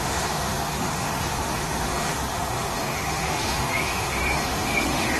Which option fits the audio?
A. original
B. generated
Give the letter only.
B